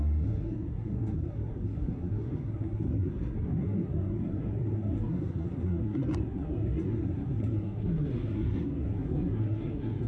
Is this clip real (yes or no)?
no